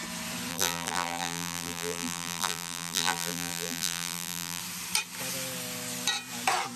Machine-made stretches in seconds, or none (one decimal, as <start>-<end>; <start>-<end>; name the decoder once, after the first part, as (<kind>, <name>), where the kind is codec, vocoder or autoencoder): 0.5-4.6 (vocoder, BigVGAN v2)